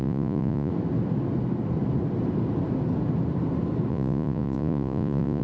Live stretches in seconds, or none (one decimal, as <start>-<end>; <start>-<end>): 0.7-3.9